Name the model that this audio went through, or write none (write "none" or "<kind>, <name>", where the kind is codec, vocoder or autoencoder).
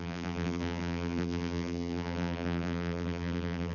vocoder, BigVGAN v2